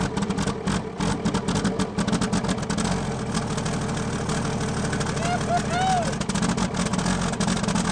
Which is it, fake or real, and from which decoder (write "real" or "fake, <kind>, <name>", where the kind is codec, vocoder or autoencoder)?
real